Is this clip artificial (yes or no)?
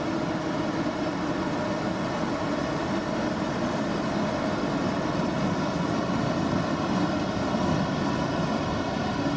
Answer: no